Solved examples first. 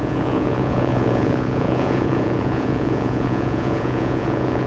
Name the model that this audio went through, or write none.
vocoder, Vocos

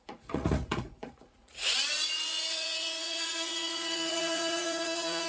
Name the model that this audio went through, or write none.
vocoder, Vocos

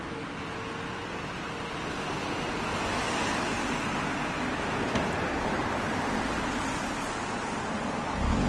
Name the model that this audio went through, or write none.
none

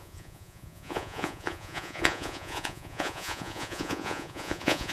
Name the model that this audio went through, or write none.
vocoder, Vocos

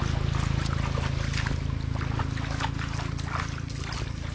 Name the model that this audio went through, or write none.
none